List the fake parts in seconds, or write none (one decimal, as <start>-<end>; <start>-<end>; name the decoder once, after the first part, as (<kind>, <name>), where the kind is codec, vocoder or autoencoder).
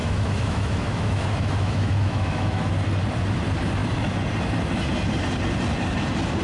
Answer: 0.0-2.7 (autoencoder, DAC-VAE)